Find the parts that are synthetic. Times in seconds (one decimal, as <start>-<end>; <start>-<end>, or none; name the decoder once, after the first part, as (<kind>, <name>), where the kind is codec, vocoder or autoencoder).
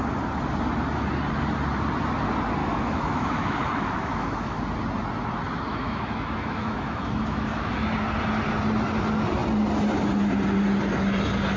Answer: 2.6-4.6 (autoencoder, DAC-VAE); 5.7-7.9